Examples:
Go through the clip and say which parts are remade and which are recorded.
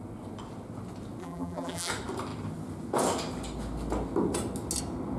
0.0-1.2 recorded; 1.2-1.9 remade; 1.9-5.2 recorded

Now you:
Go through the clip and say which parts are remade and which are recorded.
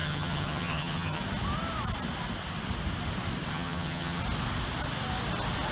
0.0-1.2 remade; 1.2-3.5 recorded; 3.5-4.2 remade; 4.2-5.7 recorded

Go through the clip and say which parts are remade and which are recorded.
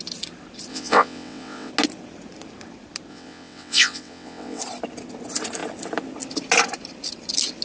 0.0-0.7 recorded; 0.7-1.7 remade; 1.7-3.1 recorded; 3.1-4.6 remade; 4.6-7.6 recorded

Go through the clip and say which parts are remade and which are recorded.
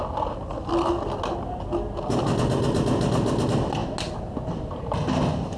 0.0-5.6 recorded